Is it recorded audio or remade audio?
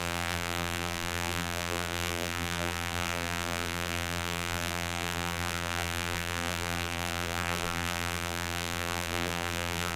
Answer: remade